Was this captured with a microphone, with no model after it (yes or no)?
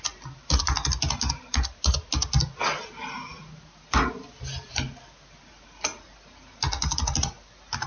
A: yes